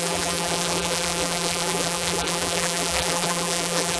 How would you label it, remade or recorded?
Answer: remade